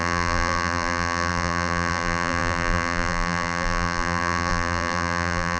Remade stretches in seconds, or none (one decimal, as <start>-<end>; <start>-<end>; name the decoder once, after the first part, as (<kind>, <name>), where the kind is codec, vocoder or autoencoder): 0.0-5.6 (vocoder, BigVGAN v2)